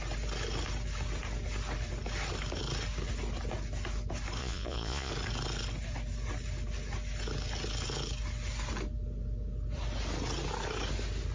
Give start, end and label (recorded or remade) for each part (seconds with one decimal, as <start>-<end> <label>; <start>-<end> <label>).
0.0-4.4 recorded; 4.4-5.1 remade; 5.1-11.3 recorded